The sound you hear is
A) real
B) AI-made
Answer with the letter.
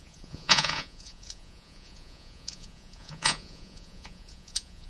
B